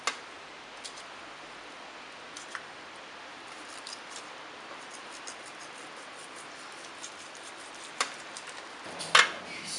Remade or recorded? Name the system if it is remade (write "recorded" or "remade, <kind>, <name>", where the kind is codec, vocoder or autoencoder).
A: recorded